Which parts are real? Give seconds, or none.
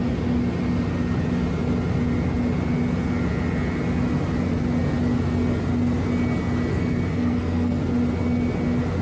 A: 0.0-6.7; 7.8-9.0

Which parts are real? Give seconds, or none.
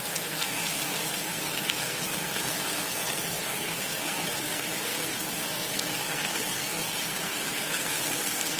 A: none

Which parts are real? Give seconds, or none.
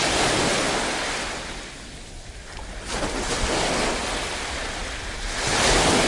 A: 0.0-6.1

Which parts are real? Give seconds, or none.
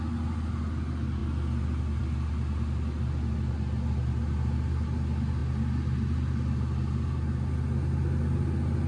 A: 0.0-8.9